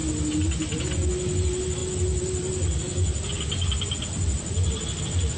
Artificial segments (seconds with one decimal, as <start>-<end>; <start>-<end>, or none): none